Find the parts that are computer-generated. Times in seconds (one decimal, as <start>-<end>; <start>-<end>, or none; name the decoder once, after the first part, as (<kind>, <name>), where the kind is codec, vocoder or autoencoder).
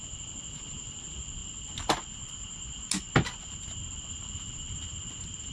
none